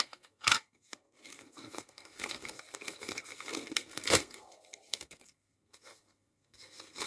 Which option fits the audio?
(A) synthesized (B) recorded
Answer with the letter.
A